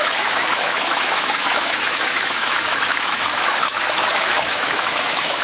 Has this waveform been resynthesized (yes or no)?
yes